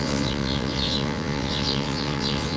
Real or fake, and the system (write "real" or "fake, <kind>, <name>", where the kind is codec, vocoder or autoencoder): fake, vocoder, WaveNeXt